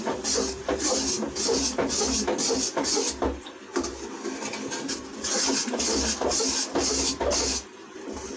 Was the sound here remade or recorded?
recorded